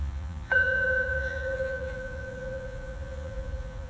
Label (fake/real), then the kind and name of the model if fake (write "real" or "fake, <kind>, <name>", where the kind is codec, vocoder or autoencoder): fake, vocoder, Vocos